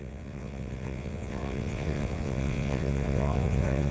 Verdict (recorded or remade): remade